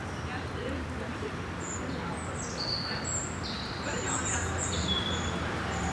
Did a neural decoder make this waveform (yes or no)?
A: no